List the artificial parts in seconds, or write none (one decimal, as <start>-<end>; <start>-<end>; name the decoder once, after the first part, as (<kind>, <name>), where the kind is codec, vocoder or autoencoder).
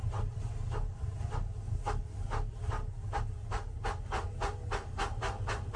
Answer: none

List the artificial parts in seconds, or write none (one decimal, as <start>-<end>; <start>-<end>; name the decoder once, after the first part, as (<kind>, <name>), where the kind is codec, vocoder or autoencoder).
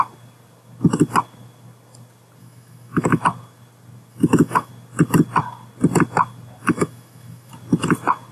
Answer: 2.4-3.2 (autoencoder, DAC-VAE); 4.1-4.7; 6.6-7.5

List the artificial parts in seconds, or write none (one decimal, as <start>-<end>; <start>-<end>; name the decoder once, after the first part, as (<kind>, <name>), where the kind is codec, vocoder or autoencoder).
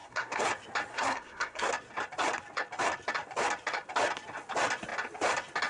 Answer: 0.0-0.5 (codec, SNAC); 0.9-1.7